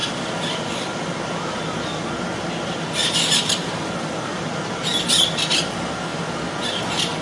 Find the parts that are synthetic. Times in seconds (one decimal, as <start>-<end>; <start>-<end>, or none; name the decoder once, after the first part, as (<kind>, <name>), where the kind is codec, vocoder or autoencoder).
3.0-3.9 (vocoder, BigVGAN v2)

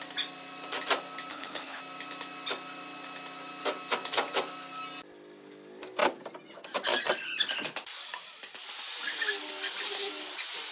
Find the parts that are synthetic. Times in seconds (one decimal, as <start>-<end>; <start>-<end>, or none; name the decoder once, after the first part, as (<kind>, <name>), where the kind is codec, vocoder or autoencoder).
1.3-1.8 (codec, HILCodec)

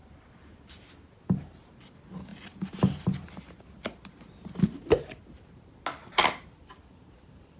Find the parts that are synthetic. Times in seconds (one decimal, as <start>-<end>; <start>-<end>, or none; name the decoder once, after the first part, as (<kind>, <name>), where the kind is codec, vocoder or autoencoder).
none

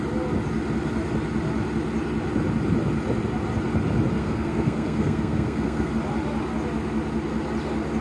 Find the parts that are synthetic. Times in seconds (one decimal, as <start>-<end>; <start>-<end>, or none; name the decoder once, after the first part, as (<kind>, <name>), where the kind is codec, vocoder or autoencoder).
4.2-5.9 (codec, SNAC)

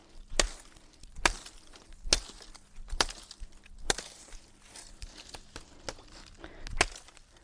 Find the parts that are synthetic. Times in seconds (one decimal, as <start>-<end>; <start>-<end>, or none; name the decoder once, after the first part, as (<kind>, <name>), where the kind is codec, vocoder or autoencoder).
none

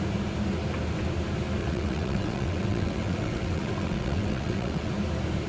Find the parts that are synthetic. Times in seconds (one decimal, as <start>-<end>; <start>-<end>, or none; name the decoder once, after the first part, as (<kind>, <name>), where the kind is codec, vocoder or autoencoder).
1.6-4.9 (vocoder, WaveNeXt)

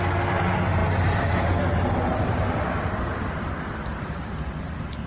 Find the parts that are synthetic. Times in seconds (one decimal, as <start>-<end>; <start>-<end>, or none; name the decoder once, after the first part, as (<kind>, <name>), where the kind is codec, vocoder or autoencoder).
0.8-1.5 (vocoder, BigVGAN v2); 2.1-5.1

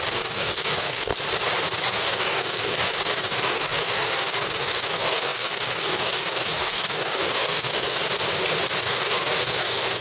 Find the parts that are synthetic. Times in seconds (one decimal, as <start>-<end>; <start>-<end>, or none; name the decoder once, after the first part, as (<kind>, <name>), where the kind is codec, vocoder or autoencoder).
0.0-1.1 (codec, DAC); 1.8-8.0; 8.8-10.0